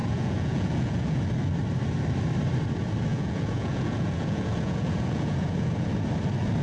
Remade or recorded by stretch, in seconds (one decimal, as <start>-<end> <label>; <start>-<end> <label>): 0.0-1.2 remade; 1.2-3.1 recorded; 3.1-5.9 remade; 5.9-6.6 recorded